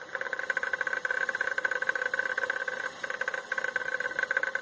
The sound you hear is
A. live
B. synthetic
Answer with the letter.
A